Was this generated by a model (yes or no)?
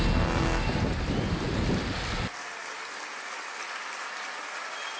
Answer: no